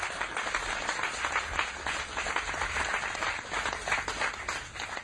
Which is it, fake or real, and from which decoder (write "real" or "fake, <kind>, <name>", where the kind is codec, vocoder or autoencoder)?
real